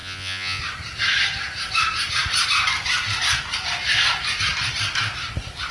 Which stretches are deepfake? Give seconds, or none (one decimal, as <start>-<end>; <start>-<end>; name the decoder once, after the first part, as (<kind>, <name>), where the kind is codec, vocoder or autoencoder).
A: 0.0-0.6 (vocoder, Vocos)